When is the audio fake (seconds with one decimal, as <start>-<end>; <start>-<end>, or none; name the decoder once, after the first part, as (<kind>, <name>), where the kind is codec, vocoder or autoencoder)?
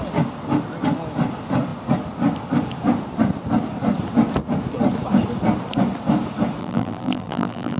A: 6.6-7.8 (vocoder, BigVGAN v2)